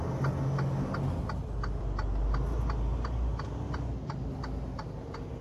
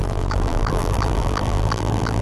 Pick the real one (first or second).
first